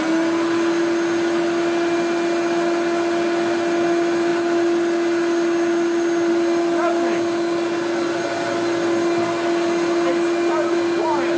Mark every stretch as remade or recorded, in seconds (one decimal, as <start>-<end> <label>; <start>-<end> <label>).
0.0-11.4 recorded